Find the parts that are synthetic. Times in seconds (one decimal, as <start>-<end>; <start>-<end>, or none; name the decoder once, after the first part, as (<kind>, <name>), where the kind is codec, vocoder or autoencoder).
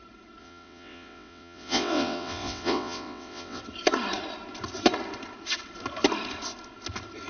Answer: 0.4-3.6 (vocoder, WaveNeXt)